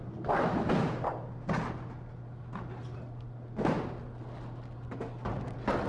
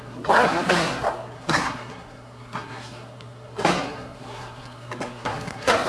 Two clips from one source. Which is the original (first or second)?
first